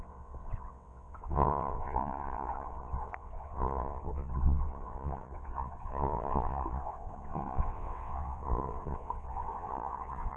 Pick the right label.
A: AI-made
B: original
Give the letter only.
A